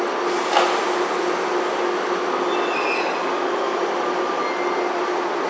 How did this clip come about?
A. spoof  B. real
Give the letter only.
B